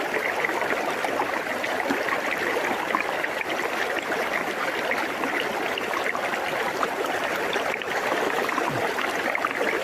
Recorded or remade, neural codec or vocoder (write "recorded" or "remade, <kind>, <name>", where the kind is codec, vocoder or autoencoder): remade, vocoder, BigVGAN v2